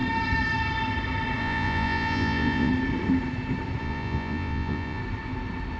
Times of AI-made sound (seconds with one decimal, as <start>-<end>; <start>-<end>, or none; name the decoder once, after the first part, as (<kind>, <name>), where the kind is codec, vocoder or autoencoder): 1.4-2.7 (vocoder, Vocos); 3.8-5.0